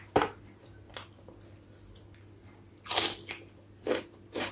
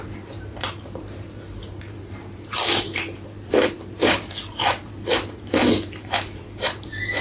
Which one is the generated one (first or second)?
second